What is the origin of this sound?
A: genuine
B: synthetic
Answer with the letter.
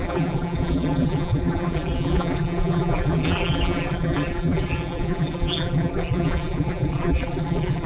B